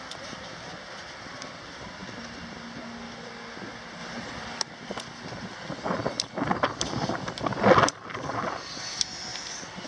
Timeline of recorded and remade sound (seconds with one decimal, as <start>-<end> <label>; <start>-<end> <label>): 0.0-2.0 recorded; 2.0-2.8 remade; 2.8-4.0 recorded; 4.0-4.6 remade; 4.6-9.3 recorded; 9.3-9.9 remade